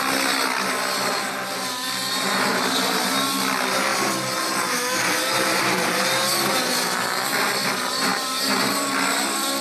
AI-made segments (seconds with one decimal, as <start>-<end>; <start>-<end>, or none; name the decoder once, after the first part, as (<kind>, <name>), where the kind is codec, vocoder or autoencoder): 8.1-8.7 (vocoder, BigVGAN v2)